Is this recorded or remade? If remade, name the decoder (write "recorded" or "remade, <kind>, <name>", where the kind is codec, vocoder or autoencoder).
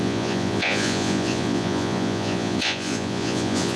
remade, vocoder, Vocos